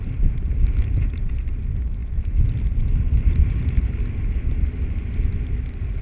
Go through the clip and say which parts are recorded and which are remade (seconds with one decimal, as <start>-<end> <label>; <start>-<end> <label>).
0.0-6.0 recorded